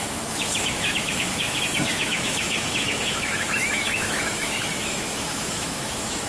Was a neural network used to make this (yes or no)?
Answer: yes